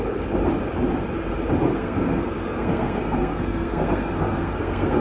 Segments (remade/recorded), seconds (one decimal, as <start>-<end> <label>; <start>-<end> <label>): 0.0-1.7 recorded; 1.7-5.0 remade